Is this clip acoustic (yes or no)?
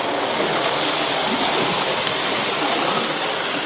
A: yes